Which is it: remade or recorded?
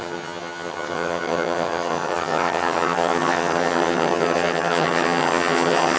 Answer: remade